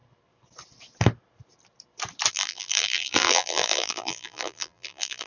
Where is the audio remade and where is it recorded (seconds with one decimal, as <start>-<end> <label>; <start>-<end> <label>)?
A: 0.0-2.3 recorded; 2.3-5.3 remade